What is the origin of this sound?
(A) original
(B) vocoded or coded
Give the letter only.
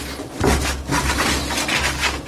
A